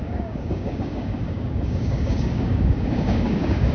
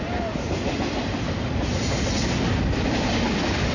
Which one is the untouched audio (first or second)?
second